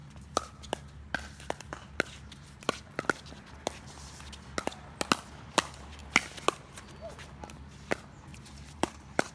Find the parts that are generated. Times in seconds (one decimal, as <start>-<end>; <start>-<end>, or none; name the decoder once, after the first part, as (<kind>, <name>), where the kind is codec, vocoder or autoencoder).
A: 8.3-9.3 (vocoder, BigVGAN v2)